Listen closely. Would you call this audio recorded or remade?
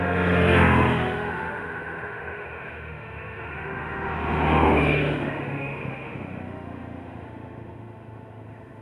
remade